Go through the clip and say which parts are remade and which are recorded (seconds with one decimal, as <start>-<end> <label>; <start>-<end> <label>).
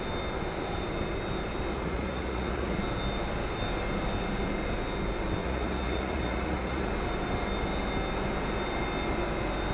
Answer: 0.0-1.7 recorded; 1.7-2.8 remade; 2.8-5.4 recorded; 5.4-6.9 remade; 6.9-9.7 recorded